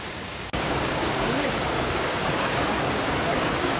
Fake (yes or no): yes